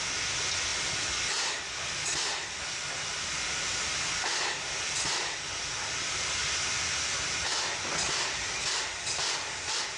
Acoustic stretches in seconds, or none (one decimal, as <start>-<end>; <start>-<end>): 0.0-10.0